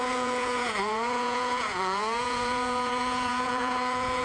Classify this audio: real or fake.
fake